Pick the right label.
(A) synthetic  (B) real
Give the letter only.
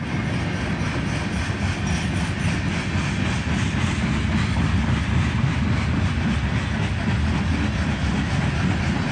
B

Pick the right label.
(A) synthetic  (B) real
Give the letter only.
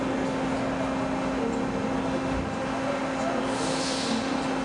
B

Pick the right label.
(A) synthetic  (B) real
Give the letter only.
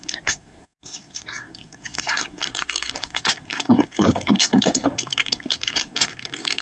A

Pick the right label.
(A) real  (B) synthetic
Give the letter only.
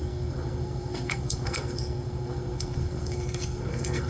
B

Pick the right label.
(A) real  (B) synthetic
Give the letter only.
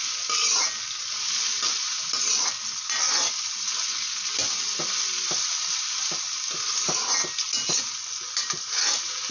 A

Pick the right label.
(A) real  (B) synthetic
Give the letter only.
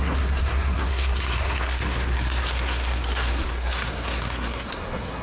B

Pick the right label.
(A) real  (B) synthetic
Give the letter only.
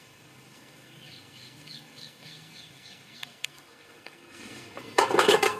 B